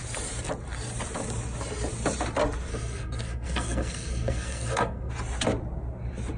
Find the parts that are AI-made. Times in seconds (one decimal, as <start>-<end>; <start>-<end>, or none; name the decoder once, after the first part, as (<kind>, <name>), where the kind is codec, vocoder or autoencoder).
2.7-5.1 (codec, SNAC)

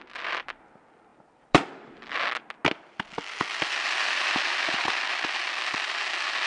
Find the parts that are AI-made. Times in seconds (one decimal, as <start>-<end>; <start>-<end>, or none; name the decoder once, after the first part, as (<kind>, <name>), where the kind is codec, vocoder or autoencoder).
1.1-1.7 (vocoder, BigVGAN v2)

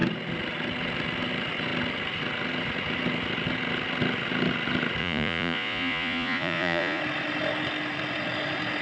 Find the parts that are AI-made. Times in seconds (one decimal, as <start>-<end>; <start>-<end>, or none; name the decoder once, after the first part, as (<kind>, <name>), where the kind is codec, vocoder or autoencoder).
5.0-7.0 (vocoder, Vocos)

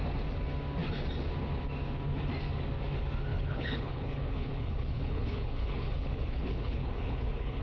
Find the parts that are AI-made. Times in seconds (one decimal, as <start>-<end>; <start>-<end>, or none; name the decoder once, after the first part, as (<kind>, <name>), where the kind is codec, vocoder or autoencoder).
3.3-7.6 (codec, HILCodec)